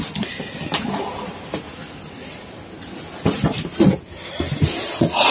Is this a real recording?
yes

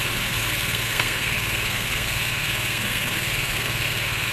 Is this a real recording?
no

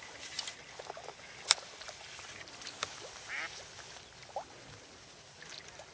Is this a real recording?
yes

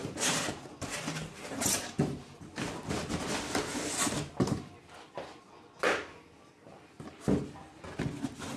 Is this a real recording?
yes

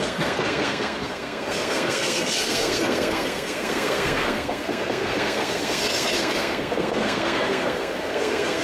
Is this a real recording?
no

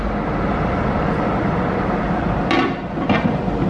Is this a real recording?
yes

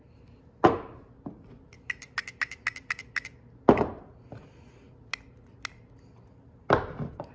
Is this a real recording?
yes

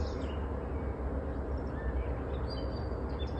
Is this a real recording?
yes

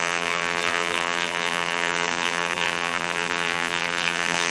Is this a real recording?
no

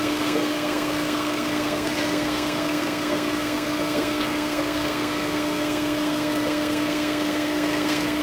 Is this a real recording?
no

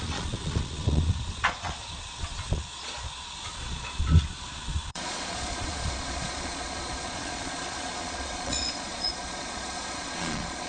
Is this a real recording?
no